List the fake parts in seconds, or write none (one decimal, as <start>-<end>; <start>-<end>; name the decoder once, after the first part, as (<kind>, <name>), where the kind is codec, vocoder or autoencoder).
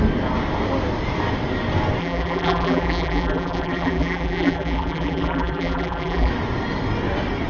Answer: 2.0-6.3 (vocoder, BigVGAN v2)